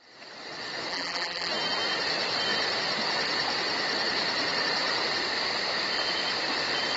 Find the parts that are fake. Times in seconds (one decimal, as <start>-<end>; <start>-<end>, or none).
0.9-1.5